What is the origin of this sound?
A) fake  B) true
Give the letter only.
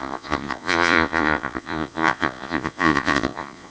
A